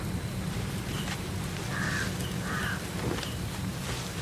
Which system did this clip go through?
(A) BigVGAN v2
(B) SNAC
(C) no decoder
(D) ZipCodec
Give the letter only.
A